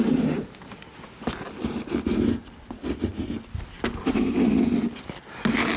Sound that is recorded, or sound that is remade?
recorded